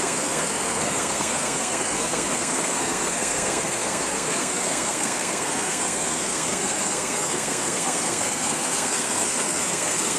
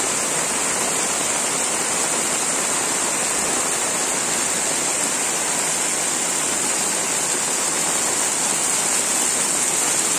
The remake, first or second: first